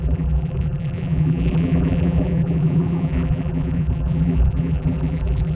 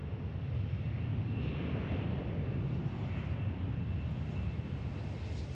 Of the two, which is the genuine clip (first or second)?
second